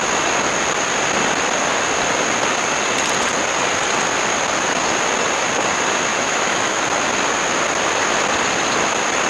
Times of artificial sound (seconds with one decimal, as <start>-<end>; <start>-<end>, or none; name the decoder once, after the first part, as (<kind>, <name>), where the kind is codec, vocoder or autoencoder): 6.1-6.8 (autoencoder, DAC-VAE)